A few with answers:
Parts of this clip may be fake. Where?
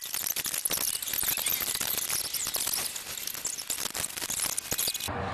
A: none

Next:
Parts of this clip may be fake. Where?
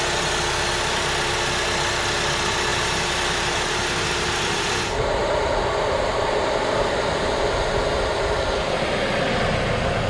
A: 2.7-7.0 (vocoder, BigVGAN v2)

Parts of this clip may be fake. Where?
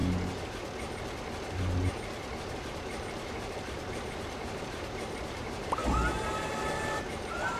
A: 3.3-5.8 (vocoder, BigVGAN v2); 6.4-7.6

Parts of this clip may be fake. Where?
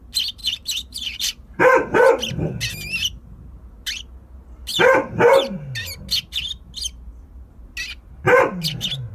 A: 0.4-2.5 (vocoder, BigVGAN v2)